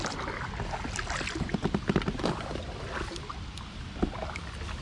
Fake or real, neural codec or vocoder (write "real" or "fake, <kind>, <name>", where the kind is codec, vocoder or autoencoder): real